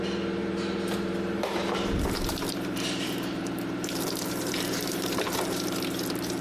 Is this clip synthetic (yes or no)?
yes